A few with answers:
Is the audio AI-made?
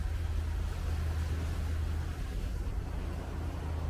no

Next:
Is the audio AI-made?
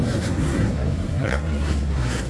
yes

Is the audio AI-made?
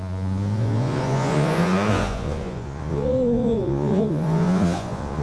yes